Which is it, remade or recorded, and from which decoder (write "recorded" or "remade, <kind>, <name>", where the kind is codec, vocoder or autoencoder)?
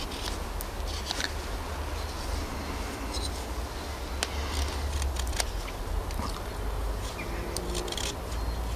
recorded